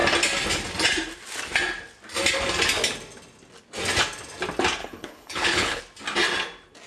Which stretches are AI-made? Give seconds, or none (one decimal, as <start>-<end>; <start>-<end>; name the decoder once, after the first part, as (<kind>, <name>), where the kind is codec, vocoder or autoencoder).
4.8-5.8 (codec, HILCodec)